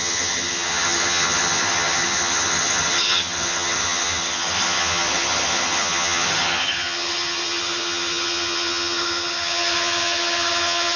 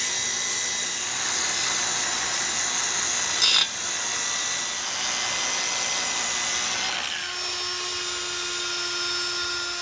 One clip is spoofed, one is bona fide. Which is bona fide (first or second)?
second